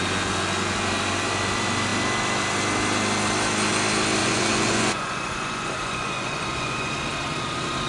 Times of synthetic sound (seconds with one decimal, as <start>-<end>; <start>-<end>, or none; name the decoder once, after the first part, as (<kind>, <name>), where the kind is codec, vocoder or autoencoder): 4.2-6.9 (vocoder, Vocos)